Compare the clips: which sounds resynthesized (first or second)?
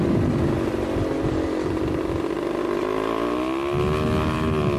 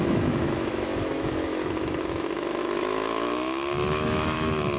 second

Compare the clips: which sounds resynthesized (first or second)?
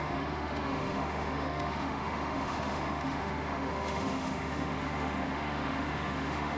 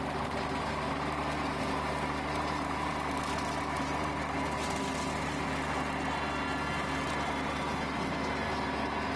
first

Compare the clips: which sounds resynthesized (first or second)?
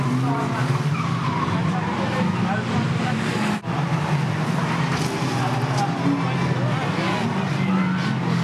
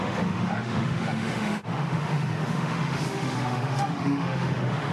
second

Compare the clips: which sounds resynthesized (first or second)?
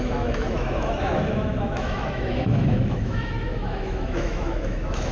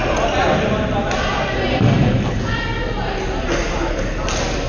first